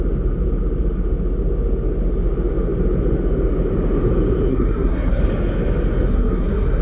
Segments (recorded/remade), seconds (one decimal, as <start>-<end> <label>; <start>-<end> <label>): 0.0-4.5 recorded; 4.5-5.2 remade; 5.2-6.1 recorded; 6.1-6.8 remade